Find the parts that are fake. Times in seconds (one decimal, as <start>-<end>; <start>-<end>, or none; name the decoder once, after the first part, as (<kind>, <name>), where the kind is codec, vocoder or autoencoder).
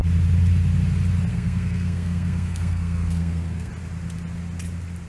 1.3-3.7 (codec, SNAC)